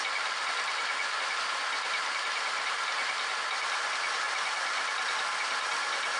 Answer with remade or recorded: recorded